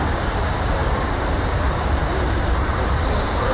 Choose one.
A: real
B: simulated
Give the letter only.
B